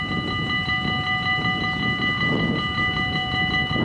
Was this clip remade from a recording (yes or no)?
no